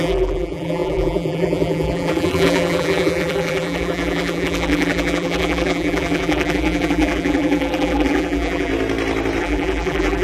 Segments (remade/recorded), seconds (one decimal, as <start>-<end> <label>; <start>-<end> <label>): 0.0-8.7 remade; 8.7-9.4 recorded; 9.4-10.2 remade